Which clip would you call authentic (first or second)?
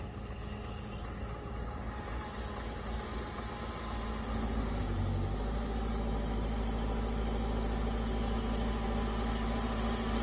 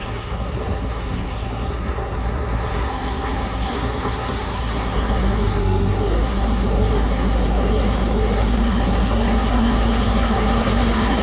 first